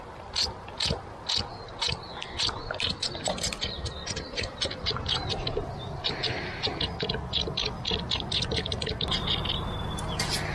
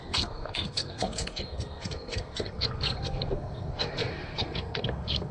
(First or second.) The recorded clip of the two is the first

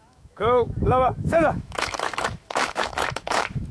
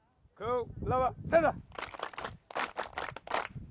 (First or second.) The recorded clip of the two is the second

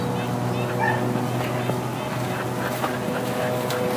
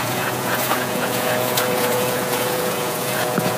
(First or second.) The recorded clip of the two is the first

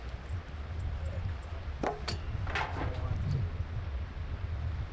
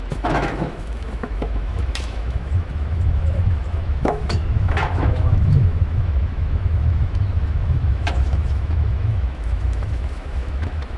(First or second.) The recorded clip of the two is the first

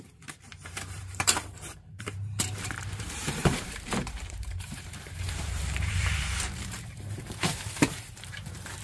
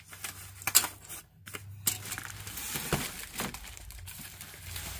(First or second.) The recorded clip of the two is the second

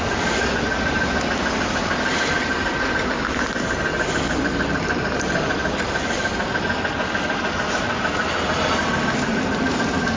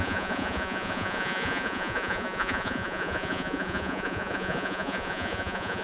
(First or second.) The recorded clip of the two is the first